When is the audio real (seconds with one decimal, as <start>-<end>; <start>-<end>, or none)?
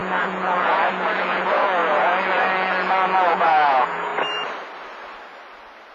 4.1-5.9